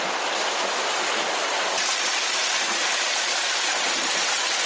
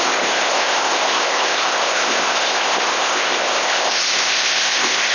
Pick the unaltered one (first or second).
first